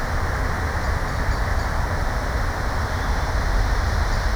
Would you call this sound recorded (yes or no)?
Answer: yes